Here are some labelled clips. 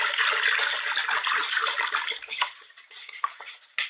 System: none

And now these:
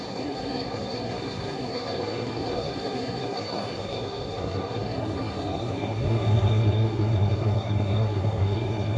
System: codec, SNAC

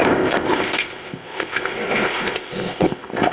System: codec, ZipCodec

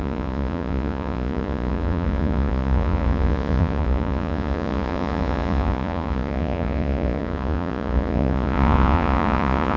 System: vocoder, Vocos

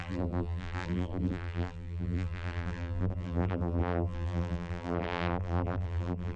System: vocoder, BigVGAN v2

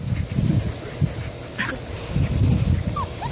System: none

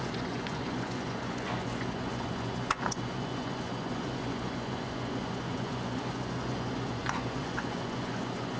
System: vocoder, Vocos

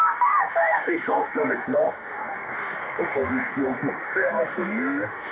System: autoencoder, DAC-VAE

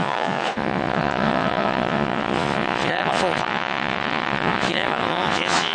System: vocoder, Vocos